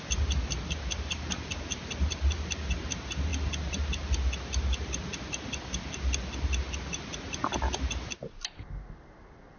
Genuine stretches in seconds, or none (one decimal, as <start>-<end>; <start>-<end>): 0.0-9.6